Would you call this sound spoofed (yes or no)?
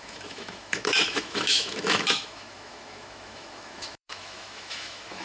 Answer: yes